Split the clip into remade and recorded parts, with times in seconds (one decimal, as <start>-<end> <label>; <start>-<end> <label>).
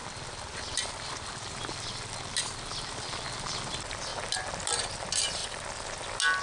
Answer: 0.0-2.4 recorded; 2.4-4.1 remade; 4.1-4.8 recorded; 4.8-5.4 remade; 5.4-6.4 recorded